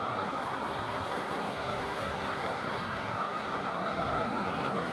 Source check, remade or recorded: remade